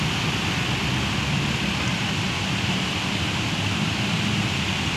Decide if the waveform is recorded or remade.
recorded